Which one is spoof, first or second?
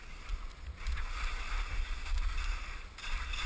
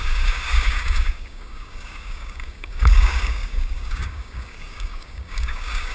second